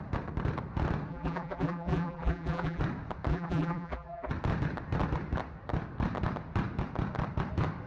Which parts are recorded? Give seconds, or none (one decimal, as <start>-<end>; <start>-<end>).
0.0-1.1; 2.8-3.3; 4.3-7.9